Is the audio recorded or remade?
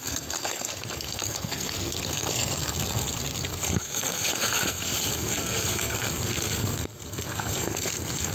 remade